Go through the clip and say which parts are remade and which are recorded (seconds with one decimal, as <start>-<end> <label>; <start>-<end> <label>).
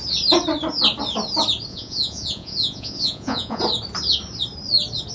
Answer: 0.0-1.7 recorded; 1.7-3.6 remade; 3.6-5.1 recorded